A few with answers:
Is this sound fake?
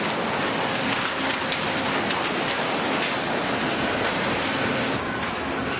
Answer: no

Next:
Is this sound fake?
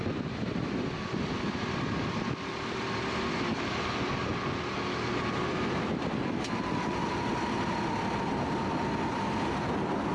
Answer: no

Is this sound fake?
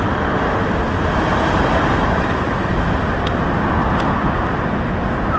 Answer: no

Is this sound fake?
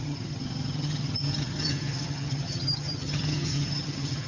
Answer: yes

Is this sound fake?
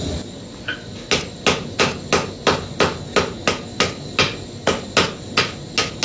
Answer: no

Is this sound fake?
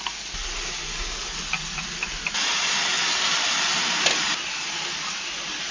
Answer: no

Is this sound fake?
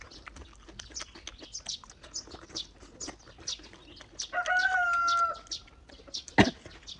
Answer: no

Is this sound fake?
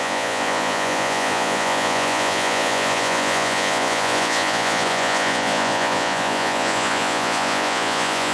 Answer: yes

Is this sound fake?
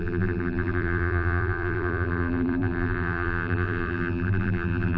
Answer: yes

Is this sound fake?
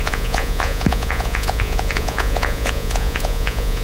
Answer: yes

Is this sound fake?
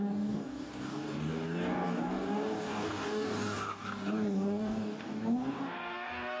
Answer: yes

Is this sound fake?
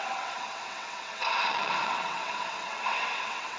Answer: yes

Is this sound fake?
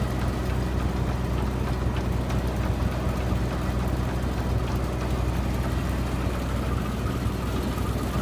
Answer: no